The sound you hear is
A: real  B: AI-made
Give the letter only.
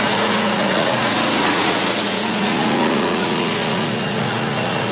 B